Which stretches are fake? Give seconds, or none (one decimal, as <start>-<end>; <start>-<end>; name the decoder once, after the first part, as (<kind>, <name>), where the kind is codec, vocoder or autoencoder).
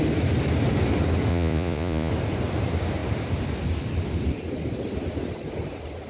1.3-2.1 (vocoder, Vocos)